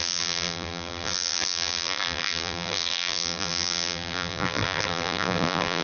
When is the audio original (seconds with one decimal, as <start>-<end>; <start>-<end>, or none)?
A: none

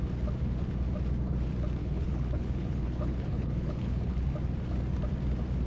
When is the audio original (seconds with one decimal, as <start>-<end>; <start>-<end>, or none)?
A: 0.0-1.8; 4.3-5.7